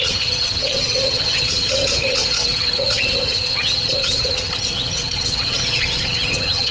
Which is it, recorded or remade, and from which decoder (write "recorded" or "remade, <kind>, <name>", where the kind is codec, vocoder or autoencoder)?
remade, vocoder, HiFi-GAN